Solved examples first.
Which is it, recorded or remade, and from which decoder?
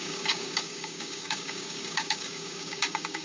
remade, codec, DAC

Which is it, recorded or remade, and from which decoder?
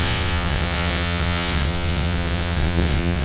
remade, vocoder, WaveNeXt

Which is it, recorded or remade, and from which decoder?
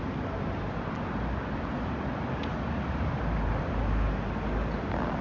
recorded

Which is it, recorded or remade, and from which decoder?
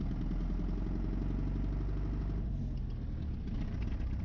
recorded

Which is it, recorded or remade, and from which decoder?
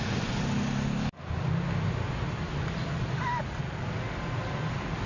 recorded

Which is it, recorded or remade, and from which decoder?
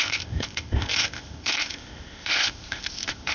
remade, codec, ZipCodec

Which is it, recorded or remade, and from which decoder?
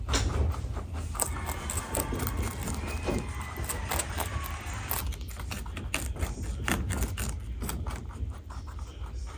recorded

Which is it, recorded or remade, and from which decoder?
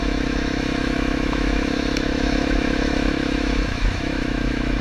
remade, autoencoder, DAC-VAE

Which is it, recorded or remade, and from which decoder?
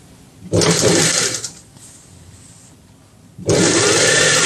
remade, vocoder, BigVGAN v2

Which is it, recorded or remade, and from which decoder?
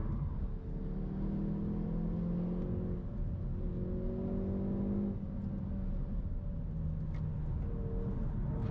recorded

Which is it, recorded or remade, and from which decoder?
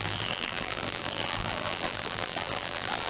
remade, vocoder, BigVGAN v2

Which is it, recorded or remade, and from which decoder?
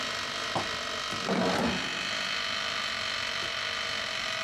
recorded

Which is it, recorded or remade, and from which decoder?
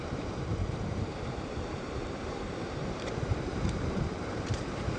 remade, vocoder, BigVGAN v2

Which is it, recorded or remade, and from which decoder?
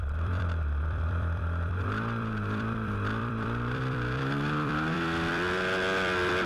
remade, vocoder, BigVGAN v2